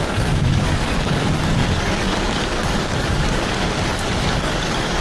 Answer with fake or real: fake